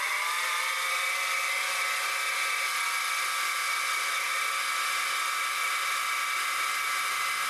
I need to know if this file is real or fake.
real